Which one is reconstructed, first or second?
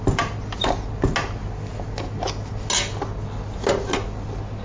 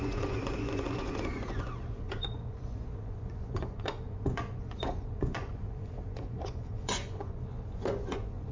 second